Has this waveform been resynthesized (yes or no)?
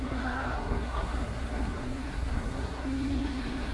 yes